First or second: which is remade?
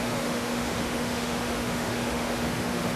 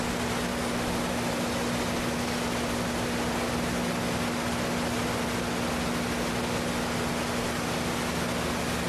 first